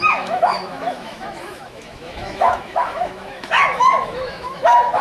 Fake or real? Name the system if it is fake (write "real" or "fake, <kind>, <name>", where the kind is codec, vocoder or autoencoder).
fake, autoencoder, DAC-VAE